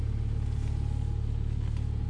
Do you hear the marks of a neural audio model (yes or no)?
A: no